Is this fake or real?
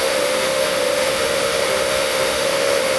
fake